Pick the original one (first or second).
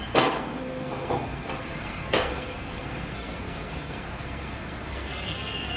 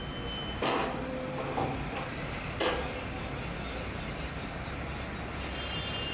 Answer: second